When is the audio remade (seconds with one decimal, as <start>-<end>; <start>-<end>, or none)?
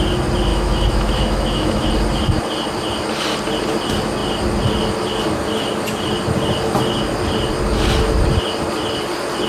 0.5-1.9